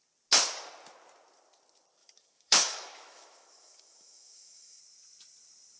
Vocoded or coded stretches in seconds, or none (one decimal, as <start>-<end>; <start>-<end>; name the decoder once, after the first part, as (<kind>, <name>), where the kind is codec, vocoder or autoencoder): 2.0-4.8 (autoencoder, DAC-VAE)